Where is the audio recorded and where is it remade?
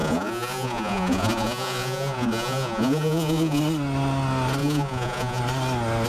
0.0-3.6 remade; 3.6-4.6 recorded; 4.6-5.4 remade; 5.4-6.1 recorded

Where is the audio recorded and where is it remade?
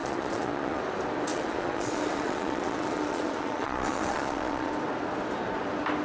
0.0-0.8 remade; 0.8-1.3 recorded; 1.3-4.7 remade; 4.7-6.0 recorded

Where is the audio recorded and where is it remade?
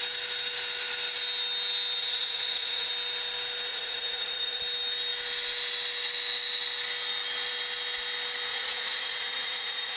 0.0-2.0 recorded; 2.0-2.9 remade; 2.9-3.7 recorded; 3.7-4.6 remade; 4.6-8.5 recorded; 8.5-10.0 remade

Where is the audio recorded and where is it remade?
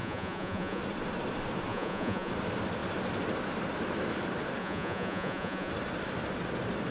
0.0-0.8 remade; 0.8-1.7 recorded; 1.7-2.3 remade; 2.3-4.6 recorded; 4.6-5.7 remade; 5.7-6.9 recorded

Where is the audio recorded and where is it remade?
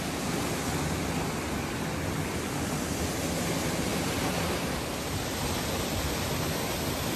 0.0-7.2 recorded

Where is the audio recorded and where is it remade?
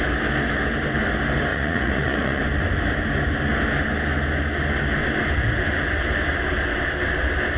0.0-1.5 recorded; 1.5-2.4 remade; 2.4-7.6 recorded